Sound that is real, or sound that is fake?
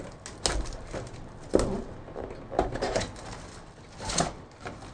real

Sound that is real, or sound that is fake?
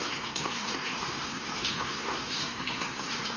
fake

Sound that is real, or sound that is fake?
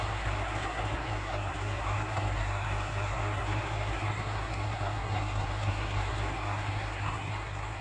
fake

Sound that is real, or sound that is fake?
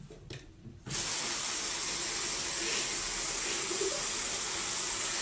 real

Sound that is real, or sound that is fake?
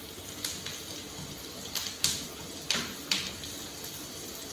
real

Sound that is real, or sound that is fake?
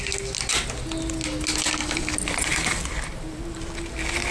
real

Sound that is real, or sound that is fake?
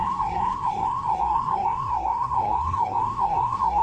fake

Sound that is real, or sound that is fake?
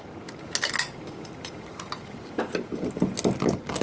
real